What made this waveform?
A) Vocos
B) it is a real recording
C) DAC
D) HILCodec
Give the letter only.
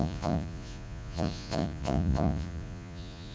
A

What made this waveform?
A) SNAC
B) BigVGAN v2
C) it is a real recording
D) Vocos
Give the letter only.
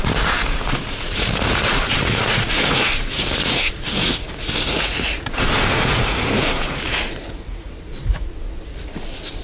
D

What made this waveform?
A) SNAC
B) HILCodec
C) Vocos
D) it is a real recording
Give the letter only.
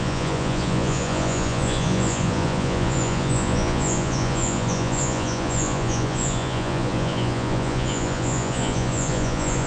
C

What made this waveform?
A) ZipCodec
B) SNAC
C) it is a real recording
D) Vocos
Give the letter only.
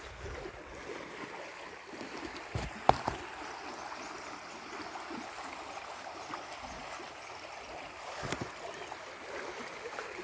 C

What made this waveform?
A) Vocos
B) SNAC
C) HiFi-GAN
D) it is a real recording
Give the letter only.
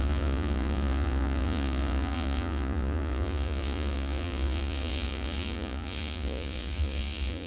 A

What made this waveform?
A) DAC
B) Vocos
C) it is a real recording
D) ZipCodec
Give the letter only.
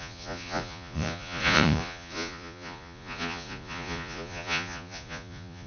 B